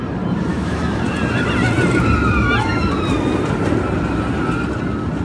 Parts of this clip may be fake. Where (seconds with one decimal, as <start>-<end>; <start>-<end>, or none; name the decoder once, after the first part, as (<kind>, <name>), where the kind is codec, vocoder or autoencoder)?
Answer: 0.5-1.0 (autoencoder, DAC-VAE)